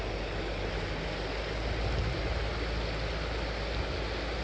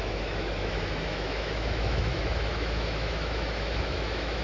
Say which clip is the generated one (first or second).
second